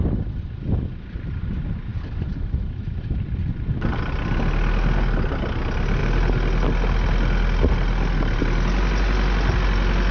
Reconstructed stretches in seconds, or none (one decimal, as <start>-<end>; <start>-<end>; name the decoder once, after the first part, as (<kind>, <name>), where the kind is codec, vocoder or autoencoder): none